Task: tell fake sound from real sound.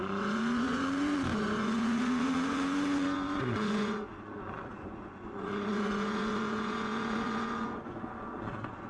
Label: fake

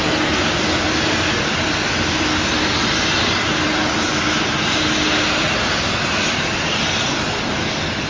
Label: real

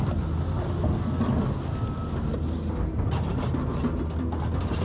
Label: real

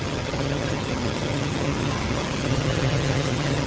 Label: fake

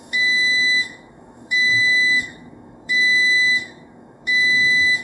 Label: fake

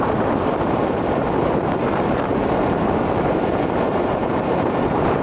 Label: fake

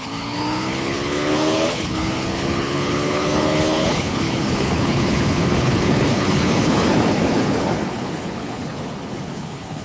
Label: fake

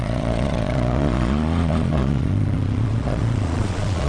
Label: fake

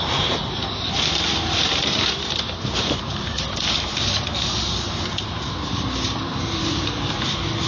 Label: fake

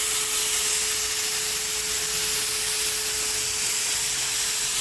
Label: real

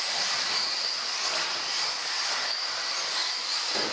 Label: real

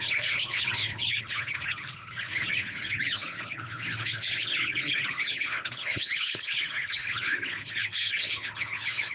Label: fake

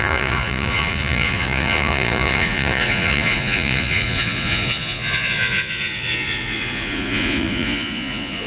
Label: fake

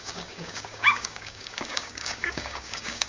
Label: fake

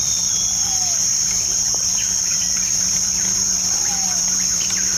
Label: fake